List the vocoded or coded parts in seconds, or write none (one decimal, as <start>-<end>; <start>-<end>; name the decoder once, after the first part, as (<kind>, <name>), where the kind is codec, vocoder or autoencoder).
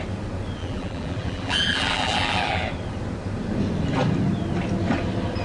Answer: 0.6-2.6 (vocoder, BigVGAN v2)